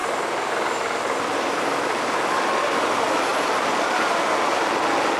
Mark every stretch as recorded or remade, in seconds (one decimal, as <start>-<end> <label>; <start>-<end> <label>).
0.0-5.2 recorded